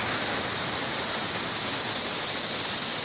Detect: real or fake real